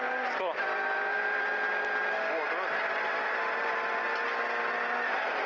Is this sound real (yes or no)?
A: yes